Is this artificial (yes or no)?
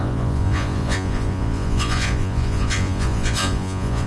yes